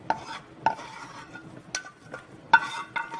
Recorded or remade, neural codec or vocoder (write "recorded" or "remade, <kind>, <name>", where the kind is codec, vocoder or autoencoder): recorded